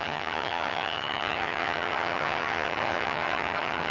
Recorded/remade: remade